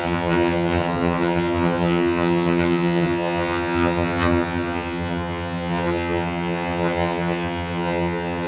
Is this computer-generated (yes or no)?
yes